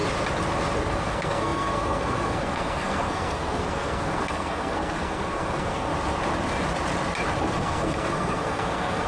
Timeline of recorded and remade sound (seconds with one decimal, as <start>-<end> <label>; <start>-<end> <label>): 0.0-0.9 recorded; 0.9-5.9 remade; 5.9-7.5 recorded; 7.5-9.1 remade